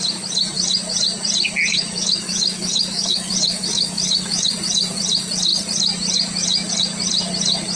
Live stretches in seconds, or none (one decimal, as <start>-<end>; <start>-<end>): 0.0-1.7; 4.5-7.8